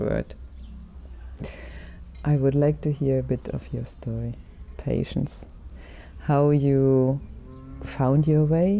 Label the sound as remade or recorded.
recorded